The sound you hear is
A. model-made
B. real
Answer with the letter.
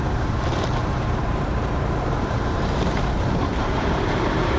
A